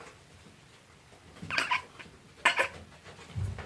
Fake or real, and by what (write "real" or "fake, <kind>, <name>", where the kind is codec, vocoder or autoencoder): real